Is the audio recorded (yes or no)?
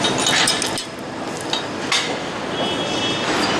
yes